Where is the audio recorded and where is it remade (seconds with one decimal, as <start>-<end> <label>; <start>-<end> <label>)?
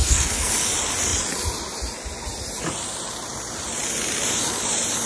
0.0-0.5 remade; 0.5-5.1 recorded